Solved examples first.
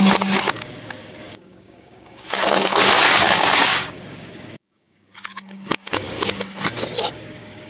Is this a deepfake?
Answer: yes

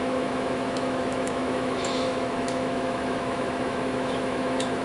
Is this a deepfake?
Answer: yes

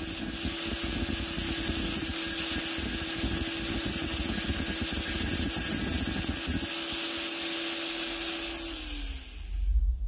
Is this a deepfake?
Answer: no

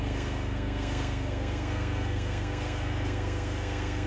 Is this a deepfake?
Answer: yes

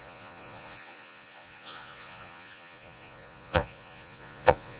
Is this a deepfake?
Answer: yes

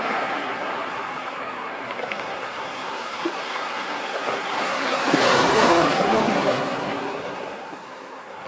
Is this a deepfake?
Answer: yes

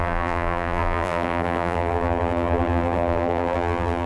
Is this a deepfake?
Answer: yes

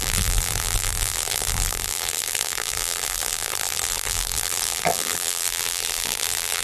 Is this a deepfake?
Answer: yes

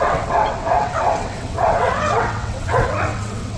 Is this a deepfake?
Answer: yes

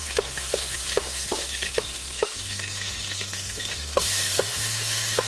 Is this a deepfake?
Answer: yes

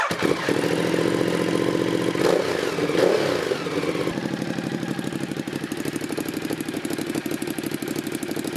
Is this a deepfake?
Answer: no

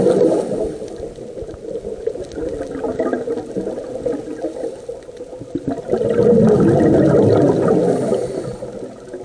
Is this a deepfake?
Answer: no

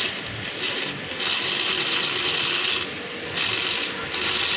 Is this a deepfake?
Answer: no